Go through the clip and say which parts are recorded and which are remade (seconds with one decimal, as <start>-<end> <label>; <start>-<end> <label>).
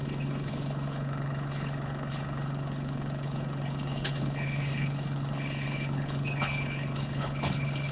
0.0-7.9 remade